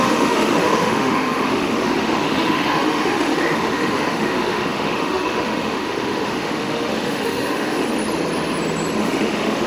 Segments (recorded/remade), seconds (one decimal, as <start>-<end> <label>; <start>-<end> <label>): 0.0-7.9 remade; 7.9-9.0 recorded; 9.0-9.7 remade